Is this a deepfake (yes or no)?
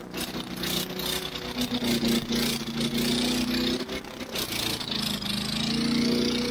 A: no